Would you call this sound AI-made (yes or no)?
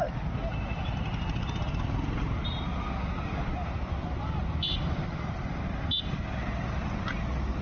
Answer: no